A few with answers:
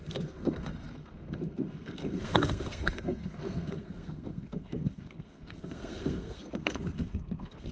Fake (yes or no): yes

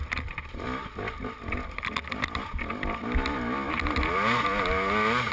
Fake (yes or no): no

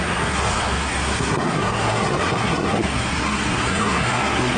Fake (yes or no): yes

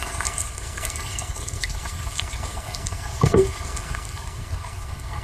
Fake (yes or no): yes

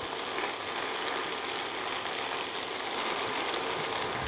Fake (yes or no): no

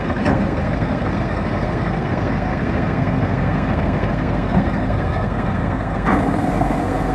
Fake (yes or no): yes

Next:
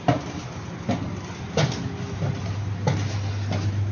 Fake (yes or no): no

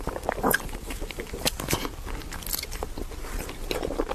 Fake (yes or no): no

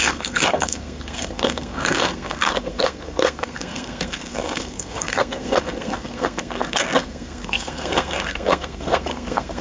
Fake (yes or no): yes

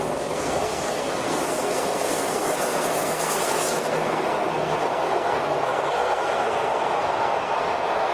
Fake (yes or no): yes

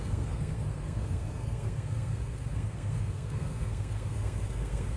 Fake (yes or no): yes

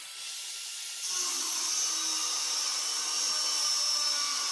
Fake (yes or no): no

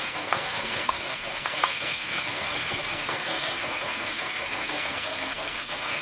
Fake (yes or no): yes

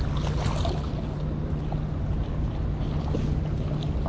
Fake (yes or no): no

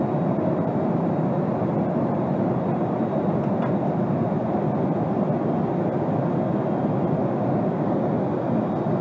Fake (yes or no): no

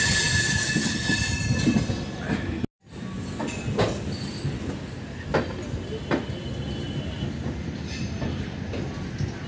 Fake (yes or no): no